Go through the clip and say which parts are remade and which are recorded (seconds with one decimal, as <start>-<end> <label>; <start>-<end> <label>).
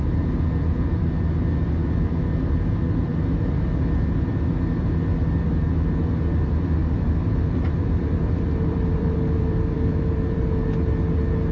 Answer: 0.0-6.8 recorded; 6.8-10.6 remade; 10.6-11.5 recorded